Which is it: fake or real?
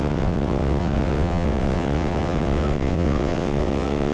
fake